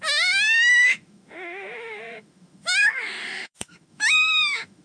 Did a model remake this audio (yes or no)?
yes